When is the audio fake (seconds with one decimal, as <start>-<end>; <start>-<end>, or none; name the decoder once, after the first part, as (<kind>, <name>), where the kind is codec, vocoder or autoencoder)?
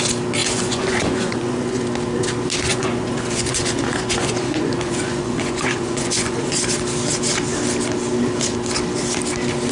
0.4-1.8 (vocoder, Vocos); 2.7-6.5